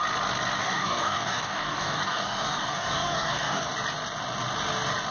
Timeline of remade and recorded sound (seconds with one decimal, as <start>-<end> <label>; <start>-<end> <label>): 0.0-0.6 recorded; 0.6-3.7 remade; 3.7-5.1 recorded